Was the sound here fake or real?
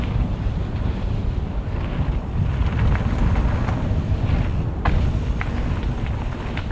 real